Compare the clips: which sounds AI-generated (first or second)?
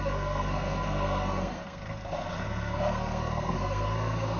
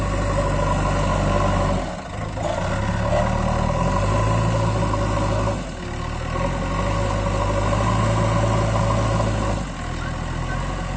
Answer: first